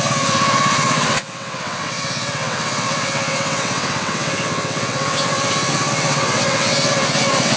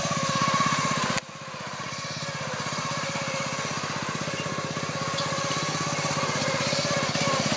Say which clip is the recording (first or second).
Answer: second